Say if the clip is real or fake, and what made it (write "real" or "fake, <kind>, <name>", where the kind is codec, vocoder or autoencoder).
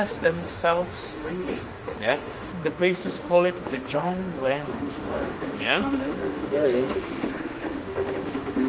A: fake, autoencoder, DAC-VAE